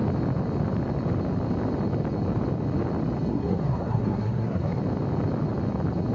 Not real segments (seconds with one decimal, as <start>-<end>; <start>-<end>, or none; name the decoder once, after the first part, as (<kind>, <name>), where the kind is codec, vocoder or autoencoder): 3.3-4.8 (codec, SNAC)